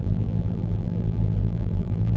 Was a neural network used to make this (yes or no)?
yes